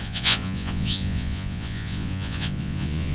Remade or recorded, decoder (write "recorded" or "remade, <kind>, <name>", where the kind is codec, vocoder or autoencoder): remade, vocoder, Vocos